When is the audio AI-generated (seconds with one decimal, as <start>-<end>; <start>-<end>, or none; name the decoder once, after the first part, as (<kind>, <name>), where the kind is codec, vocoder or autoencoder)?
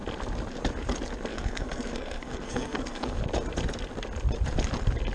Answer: 1.3-3.2 (codec, SNAC)